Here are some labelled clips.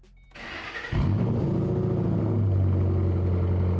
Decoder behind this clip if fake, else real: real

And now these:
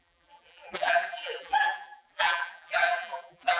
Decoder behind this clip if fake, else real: fake, vocoder, BigVGAN v2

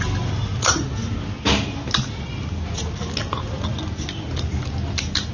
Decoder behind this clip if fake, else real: real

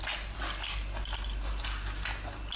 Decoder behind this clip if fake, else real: real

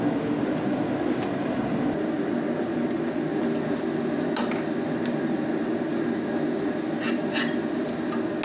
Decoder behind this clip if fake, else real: real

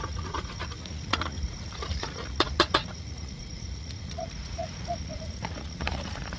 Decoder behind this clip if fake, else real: fake, vocoder, Vocos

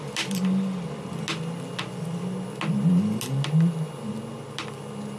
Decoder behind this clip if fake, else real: real